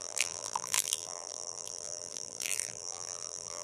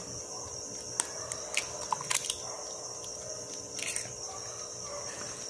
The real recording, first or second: second